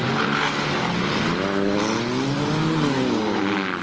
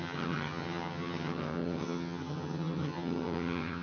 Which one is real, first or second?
first